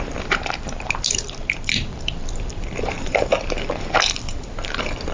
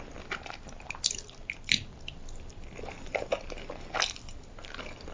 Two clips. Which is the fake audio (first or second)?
first